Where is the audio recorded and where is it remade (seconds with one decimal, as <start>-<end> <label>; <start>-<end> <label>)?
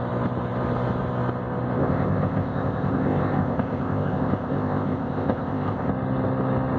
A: 0.0-1.8 recorded; 1.8-5.9 remade; 5.9-6.8 recorded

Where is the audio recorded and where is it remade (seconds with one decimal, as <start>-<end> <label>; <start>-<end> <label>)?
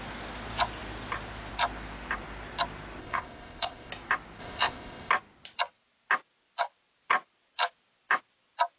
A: 0.0-3.0 recorded; 3.0-3.9 remade; 3.9-4.4 recorded; 4.4-5.1 remade; 5.1-8.8 recorded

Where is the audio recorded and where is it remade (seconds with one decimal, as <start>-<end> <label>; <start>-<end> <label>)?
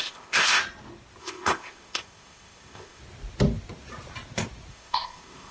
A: 0.0-0.6 remade; 0.6-1.2 recorded; 1.2-3.0 remade; 3.0-4.7 recorded; 4.7-5.5 remade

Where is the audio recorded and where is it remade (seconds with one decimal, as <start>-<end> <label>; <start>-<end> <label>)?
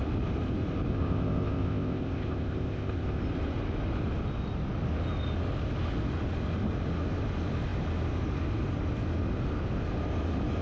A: 0.0-0.9 recorded; 0.9-3.2 remade; 3.2-10.6 recorded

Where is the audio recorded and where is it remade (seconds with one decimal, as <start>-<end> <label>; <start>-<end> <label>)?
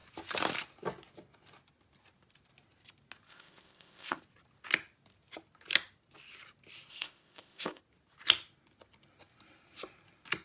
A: 0.0-3.3 recorded; 3.3-4.2 remade; 4.2-6.9 recorded; 6.9-7.8 remade; 7.8-10.4 recorded